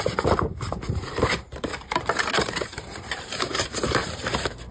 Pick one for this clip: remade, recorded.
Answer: remade